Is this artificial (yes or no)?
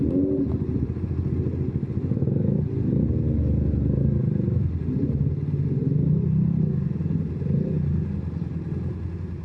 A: no